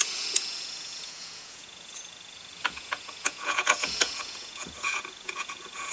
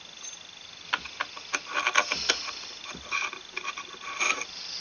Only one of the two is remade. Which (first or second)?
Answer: first